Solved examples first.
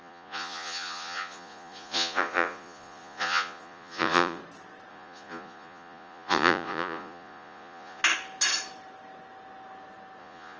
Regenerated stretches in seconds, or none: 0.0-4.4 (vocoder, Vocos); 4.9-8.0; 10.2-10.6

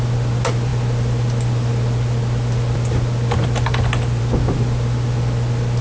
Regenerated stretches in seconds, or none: none

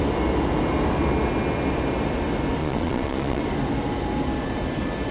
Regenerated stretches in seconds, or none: 2.6-3.4 (vocoder, Vocos)

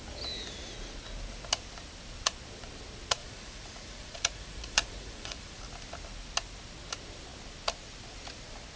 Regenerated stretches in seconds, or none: 3.2-5.6 (vocoder, Vocos)

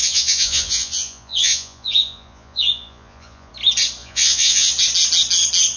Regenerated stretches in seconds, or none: 0.0-3.5 (vocoder, Vocos); 4.0-4.7

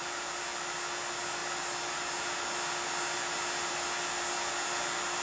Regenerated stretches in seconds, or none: none

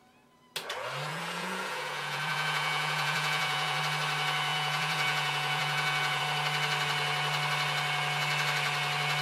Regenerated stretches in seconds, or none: 1.1-3.8 (vocoder, Vocos); 4.5-6.2